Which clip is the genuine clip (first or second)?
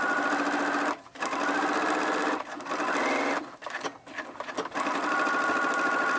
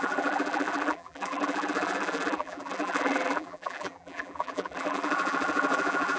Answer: first